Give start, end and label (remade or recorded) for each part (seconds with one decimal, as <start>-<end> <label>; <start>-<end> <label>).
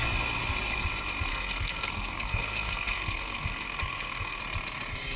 0.0-1.3 recorded; 1.3-4.4 remade; 4.4-5.2 recorded